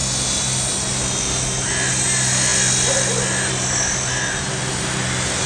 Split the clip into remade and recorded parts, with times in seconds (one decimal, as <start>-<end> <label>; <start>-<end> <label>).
0.0-5.5 recorded